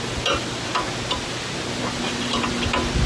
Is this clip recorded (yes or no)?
yes